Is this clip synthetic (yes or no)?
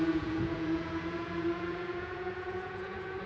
yes